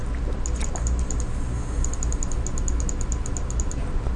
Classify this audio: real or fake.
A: real